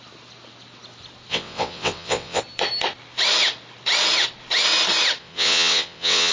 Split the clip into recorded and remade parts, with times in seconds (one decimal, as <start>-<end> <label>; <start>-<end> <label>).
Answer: 0.0-1.3 recorded; 1.3-2.4 remade; 2.4-5.2 recorded; 5.2-6.3 remade